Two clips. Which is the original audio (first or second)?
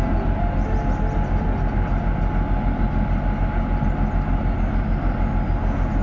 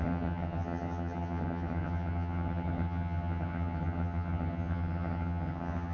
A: first